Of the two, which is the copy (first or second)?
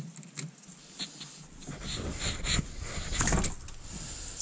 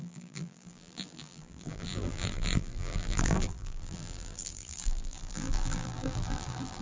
second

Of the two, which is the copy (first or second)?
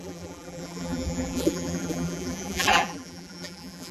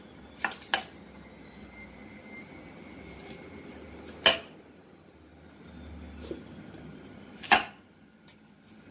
first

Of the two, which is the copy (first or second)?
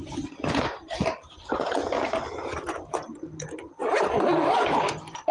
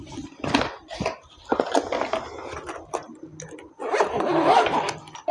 first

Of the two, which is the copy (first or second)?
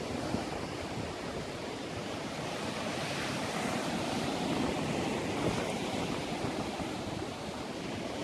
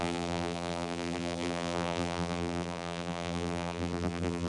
second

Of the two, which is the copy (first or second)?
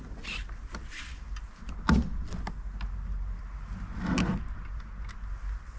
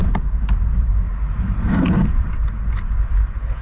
second